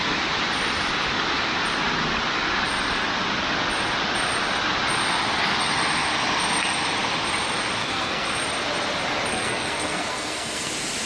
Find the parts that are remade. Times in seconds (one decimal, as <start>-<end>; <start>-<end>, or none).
7.8-8.4; 9.3-10.7